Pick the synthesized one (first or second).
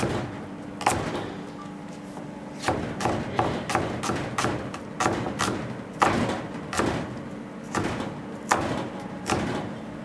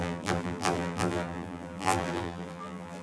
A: second